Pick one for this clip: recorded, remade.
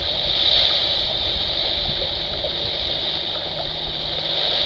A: recorded